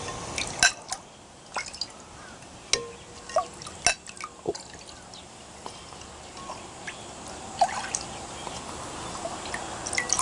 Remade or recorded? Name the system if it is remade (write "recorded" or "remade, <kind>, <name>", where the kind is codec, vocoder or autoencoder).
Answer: recorded